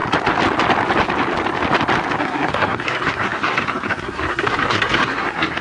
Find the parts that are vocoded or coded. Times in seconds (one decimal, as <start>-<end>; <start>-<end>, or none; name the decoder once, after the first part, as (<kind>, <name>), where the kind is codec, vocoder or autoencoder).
2.2-5.6 (codec, SNAC)